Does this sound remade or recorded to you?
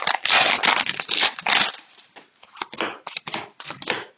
recorded